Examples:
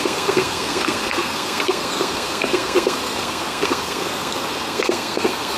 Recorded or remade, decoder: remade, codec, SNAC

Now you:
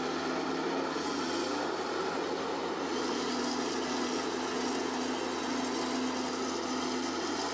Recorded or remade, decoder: recorded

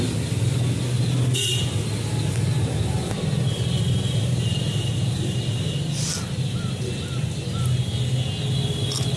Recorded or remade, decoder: recorded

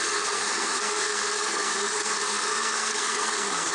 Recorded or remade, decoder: remade, codec, SNAC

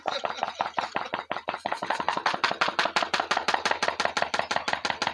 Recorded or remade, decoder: recorded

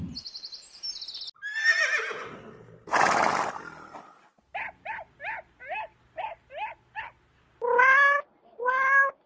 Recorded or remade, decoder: recorded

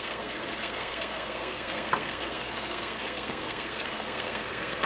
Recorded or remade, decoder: remade, codec, SNAC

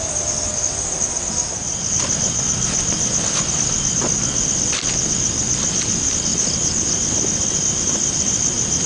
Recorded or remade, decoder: recorded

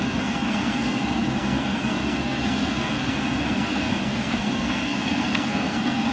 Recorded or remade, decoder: remade, codec, SNAC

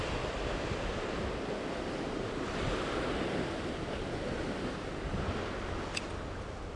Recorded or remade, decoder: recorded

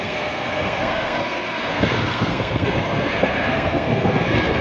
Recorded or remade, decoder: remade, codec, SNAC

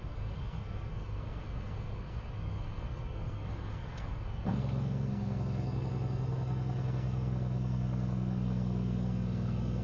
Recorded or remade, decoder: remade, codec, SNAC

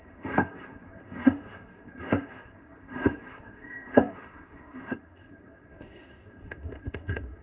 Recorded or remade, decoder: remade, codec, SNAC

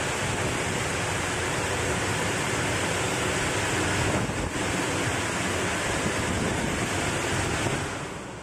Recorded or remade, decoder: recorded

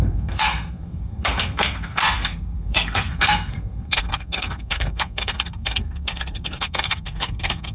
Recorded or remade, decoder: remade, codec, SNAC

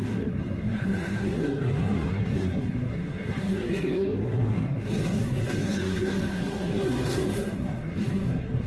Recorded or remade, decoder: remade, codec, SNAC